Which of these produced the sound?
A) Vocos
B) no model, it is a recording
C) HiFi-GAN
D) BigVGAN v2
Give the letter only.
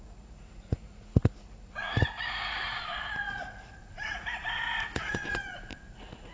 A